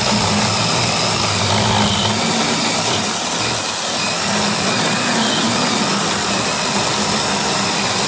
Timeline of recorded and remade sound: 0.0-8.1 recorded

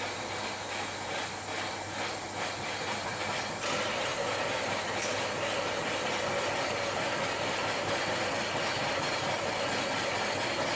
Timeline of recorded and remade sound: 0.0-10.8 recorded

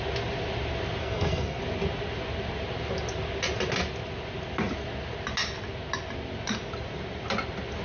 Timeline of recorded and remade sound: 0.0-1.0 recorded; 1.0-1.6 remade; 1.6-7.8 recorded

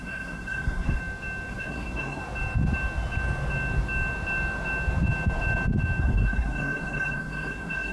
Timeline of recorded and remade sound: 0.0-1.0 remade; 1.0-1.5 recorded; 1.5-2.2 remade; 2.2-6.0 recorded; 6.0-7.9 remade

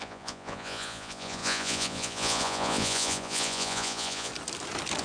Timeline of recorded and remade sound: 0.0-4.3 remade; 4.3-5.0 recorded

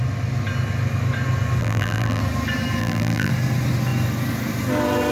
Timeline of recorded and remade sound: 0.0-1.6 recorded; 1.6-2.2 remade; 2.2-2.8 recorded; 2.8-3.3 remade; 3.3-5.1 recorded